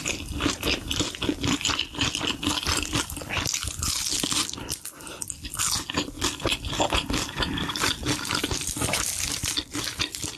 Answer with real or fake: real